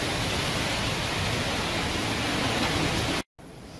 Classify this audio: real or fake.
real